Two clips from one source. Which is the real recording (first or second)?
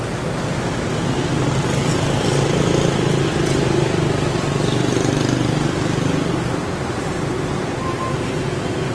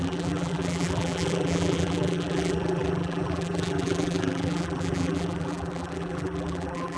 first